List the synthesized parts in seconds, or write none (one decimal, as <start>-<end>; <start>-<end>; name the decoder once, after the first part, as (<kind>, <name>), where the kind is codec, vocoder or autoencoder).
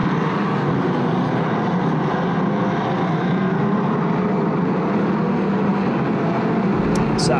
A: none